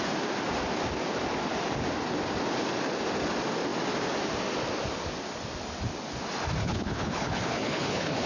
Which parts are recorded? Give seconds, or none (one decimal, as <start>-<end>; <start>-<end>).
0.0-6.6